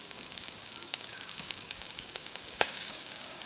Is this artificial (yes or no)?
yes